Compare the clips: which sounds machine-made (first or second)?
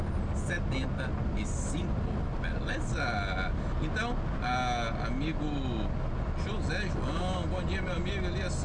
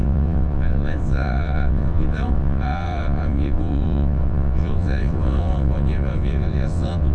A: second